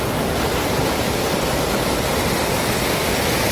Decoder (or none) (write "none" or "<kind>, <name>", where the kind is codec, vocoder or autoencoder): none